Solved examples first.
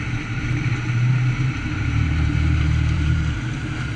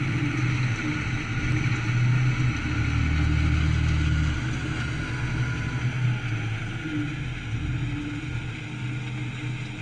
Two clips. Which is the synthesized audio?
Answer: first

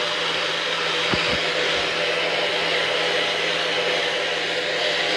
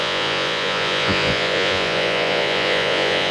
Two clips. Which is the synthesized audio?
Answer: second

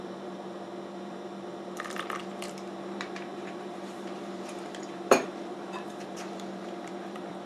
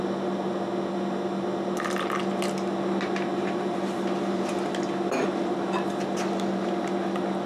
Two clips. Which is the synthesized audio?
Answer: first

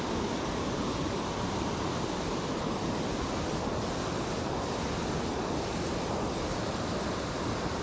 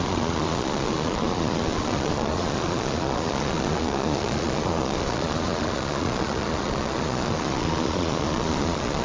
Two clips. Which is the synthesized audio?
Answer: second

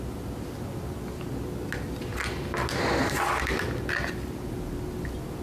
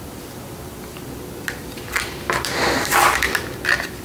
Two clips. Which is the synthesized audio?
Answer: second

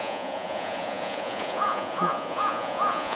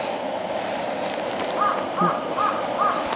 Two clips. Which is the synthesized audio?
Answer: first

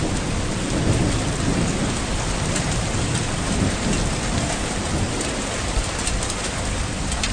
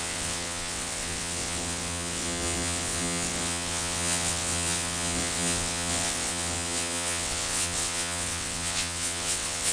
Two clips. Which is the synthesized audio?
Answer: second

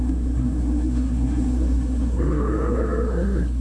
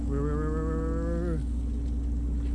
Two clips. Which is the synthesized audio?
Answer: first